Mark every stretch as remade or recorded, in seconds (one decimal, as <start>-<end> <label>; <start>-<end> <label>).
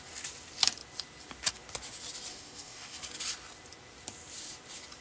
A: 0.0-2.3 recorded; 2.3-3.0 remade; 3.0-5.0 recorded